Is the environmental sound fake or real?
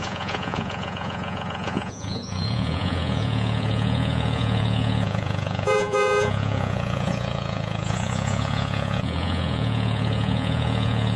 fake